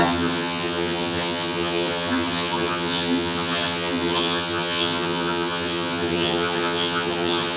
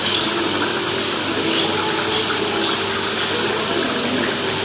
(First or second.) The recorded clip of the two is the second